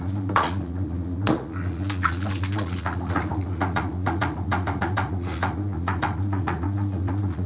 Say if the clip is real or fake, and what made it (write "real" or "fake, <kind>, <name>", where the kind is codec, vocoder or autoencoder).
fake, vocoder, Vocos